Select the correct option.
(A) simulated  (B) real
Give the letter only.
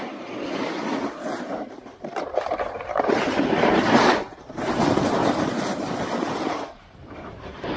A